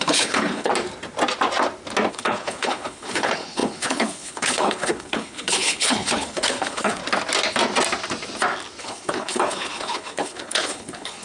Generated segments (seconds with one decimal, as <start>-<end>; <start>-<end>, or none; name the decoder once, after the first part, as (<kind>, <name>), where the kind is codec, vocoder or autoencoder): 0.0-0.7 (codec, HILCodec); 2.1-7.0; 8.8-11.2